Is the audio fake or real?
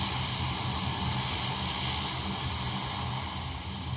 real